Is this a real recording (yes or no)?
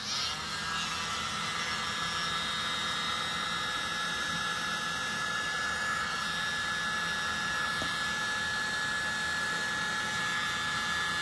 yes